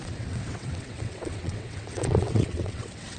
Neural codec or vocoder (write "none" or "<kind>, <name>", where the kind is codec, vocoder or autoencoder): vocoder, WaveNeXt